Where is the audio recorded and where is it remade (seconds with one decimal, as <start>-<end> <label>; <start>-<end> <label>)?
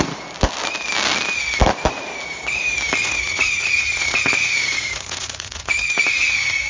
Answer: 0.0-3.0 recorded; 3.0-6.1 remade; 6.1-6.7 recorded